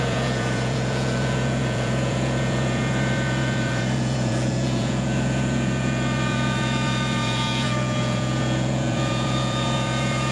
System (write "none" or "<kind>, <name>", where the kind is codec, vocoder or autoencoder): vocoder, Vocos